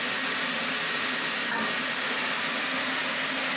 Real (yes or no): yes